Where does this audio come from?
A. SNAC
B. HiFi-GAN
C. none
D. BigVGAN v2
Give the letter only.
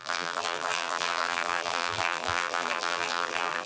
D